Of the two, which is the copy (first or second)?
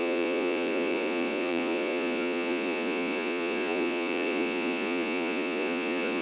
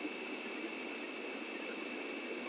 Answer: first